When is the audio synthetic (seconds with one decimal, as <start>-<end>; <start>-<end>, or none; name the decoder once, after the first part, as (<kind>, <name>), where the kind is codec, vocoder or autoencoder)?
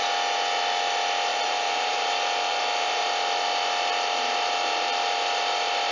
1.3-2.1 (vocoder, BigVGAN v2); 2.5-3.0